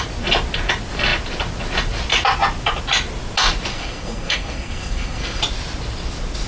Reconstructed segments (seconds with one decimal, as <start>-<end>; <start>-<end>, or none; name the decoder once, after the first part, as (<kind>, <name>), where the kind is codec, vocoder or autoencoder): 3.7-5.4 (codec, SNAC)